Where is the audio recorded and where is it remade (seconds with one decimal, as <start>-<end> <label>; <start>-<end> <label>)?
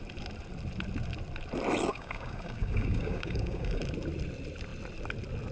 0.0-1.9 recorded; 1.9-3.8 remade; 3.8-5.5 recorded